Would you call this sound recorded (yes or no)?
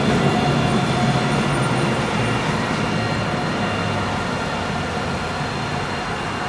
yes